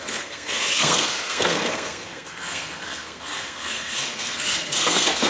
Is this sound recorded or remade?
remade